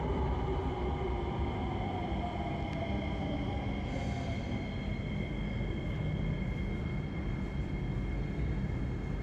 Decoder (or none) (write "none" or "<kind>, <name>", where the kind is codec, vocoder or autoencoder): none